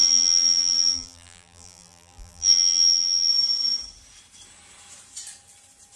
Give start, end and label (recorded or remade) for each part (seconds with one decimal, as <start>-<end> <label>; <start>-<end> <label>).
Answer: 0.0-3.3 remade; 3.3-6.0 recorded